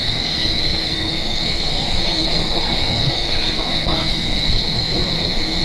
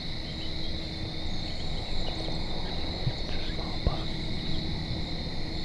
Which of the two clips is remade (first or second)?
first